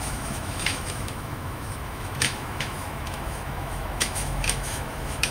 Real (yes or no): no